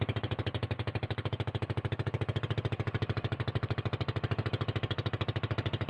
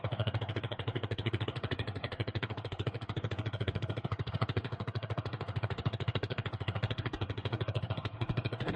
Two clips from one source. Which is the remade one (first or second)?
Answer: second